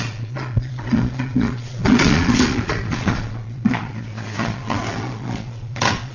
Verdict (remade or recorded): remade